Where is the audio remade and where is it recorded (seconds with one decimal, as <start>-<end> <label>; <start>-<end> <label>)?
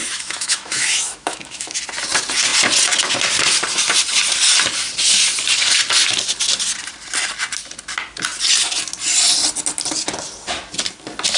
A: 0.0-1.8 remade; 1.8-11.4 recorded